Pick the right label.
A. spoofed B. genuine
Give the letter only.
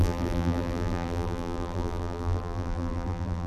A